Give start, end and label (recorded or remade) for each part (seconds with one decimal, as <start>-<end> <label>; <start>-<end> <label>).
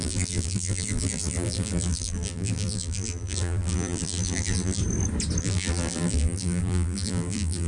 0.0-4.8 remade; 4.8-5.4 recorded; 5.4-7.7 remade